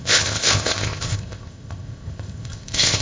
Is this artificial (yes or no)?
yes